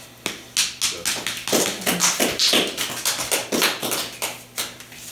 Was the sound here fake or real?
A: real